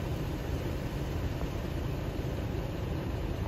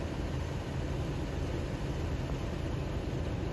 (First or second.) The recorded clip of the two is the second